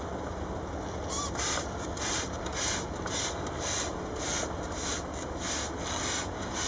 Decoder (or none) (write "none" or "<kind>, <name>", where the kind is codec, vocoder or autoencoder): none